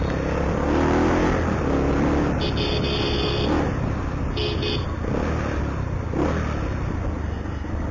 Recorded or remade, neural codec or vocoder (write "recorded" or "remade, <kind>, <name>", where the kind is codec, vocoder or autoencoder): recorded